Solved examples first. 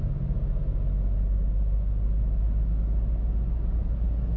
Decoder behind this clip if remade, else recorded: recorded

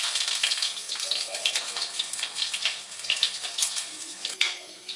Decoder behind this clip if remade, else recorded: remade, codec, SNAC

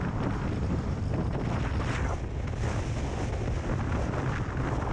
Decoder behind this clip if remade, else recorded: recorded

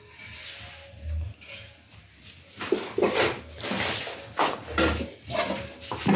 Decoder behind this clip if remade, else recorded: recorded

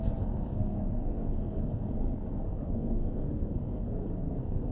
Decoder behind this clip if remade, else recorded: remade, codec, SNAC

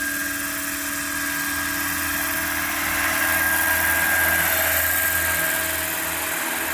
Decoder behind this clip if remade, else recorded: recorded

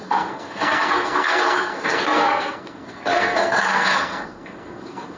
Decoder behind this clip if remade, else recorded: remade, codec, SNAC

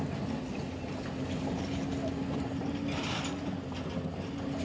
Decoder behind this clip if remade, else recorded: recorded